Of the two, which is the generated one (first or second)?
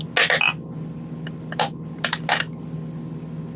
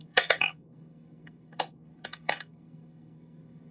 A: second